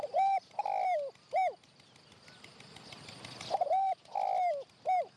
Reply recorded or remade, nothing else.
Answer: recorded